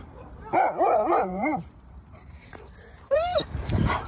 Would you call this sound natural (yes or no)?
no